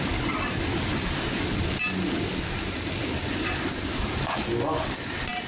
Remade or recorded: recorded